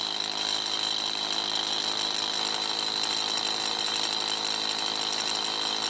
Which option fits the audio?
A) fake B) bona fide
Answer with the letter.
B